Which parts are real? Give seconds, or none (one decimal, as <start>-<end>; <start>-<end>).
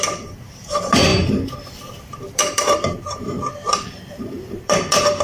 none